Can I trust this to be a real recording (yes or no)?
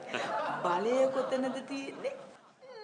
yes